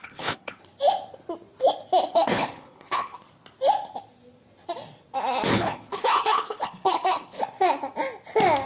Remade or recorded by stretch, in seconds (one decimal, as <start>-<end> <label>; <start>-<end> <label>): 0.0-0.6 remade; 0.6-2.1 recorded; 2.1-3.2 remade; 3.2-5.5 recorded; 5.5-7.4 remade; 7.4-8.7 recorded